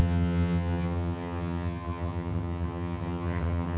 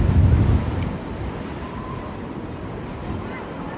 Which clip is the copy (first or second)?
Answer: first